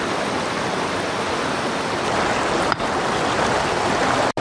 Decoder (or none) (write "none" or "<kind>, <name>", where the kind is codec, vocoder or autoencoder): none